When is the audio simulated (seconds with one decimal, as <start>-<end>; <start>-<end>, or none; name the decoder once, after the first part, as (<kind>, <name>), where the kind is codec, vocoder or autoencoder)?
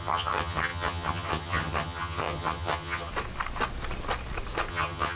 0.0-3.1 (vocoder, HiFi-GAN); 4.7-5.2